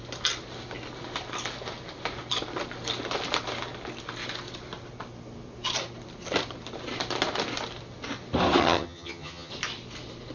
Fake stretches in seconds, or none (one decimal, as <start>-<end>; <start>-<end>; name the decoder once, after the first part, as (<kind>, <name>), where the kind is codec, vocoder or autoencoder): 8.6-9.5 (vocoder, HiFi-GAN)